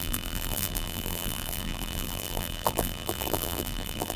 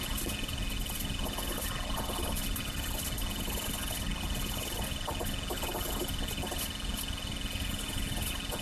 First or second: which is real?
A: second